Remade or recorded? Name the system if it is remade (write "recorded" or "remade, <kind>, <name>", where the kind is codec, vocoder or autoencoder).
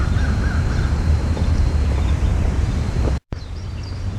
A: remade, vocoder, BigVGAN v2